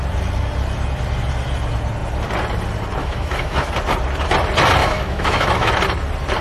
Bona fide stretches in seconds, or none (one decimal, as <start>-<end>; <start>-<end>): 0.0-3.0; 3.7-4.8; 5.7-6.4